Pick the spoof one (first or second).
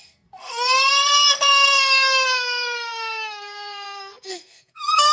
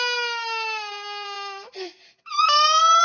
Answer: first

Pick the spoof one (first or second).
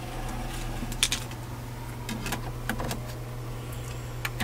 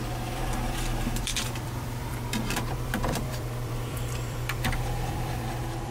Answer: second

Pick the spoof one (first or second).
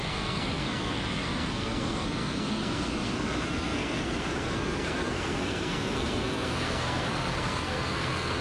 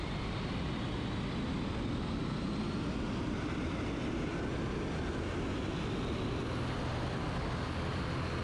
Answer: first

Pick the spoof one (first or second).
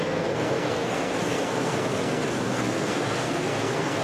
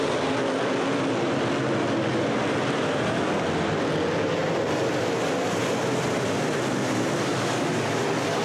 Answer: first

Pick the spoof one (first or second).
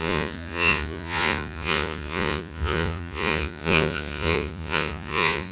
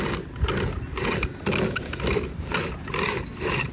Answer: first